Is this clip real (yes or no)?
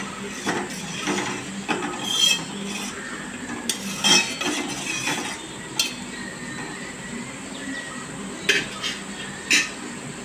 yes